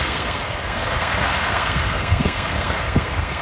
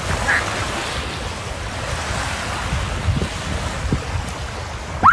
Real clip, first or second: second